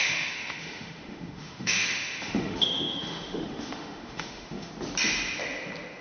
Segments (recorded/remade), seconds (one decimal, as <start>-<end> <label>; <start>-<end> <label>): 0.0-4.7 remade; 4.7-6.0 recorded